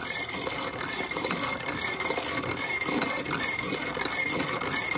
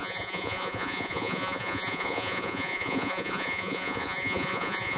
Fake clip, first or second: second